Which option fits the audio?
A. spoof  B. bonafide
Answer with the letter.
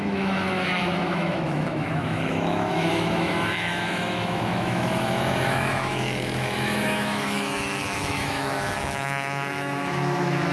A